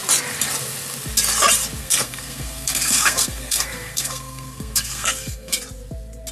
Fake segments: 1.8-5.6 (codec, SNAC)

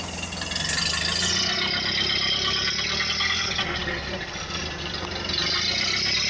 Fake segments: none